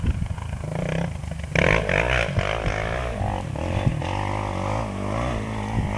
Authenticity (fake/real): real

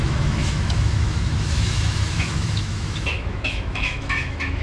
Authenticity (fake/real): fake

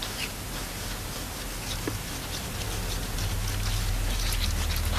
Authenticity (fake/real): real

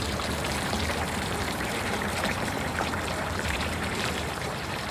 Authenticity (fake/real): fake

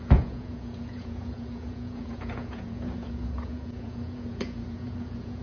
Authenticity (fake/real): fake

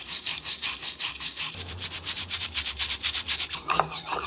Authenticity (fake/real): fake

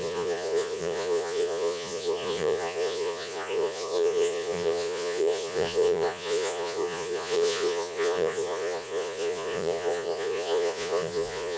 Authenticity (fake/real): fake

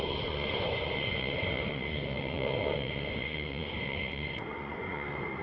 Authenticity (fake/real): fake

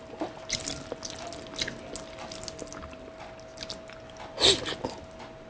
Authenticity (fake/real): real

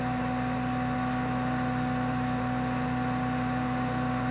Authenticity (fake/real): real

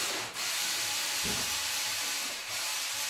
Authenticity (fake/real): fake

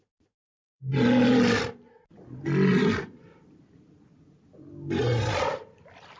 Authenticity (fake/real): real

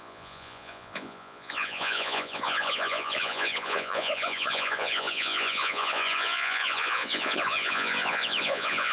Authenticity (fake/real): fake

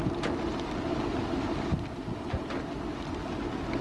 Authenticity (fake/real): real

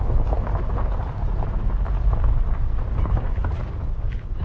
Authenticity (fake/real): real